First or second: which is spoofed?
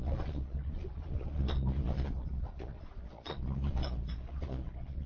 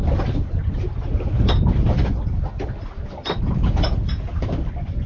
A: first